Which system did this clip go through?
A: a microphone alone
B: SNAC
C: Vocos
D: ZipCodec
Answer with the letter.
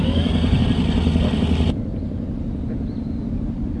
A